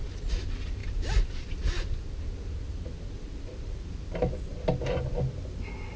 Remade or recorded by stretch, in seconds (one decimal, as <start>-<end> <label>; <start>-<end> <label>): 0.0-6.0 recorded

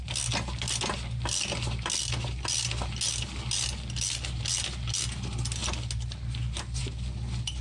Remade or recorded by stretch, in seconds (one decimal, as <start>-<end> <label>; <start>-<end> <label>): 0.0-7.6 recorded

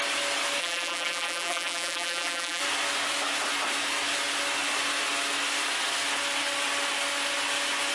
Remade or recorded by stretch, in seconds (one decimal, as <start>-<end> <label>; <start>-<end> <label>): 0.0-0.6 recorded; 0.6-2.6 remade; 2.6-7.9 recorded

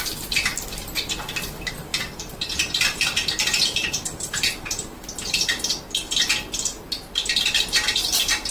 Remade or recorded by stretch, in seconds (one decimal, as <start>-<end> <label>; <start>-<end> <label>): 0.0-1.9 recorded; 1.9-5.0 remade; 5.0-8.5 recorded

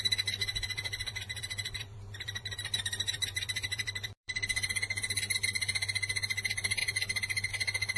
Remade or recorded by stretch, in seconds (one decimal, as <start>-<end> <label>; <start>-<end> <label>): 0.0-0.4 recorded; 0.4-4.7 remade; 4.7-8.0 recorded

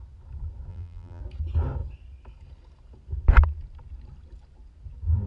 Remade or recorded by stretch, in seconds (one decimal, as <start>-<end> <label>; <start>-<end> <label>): 0.0-0.7 recorded; 0.7-1.2 remade; 1.2-5.3 recorded

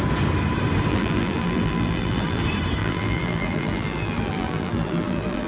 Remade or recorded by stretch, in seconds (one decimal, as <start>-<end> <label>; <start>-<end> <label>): 0.0-0.9 recorded; 0.9-2.4 remade; 2.4-2.8 recorded; 2.8-5.5 remade

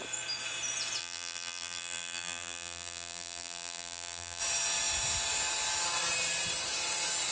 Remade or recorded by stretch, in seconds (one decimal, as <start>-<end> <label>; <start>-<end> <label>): 0.0-1.0 recorded; 1.0-4.4 remade; 4.4-7.3 recorded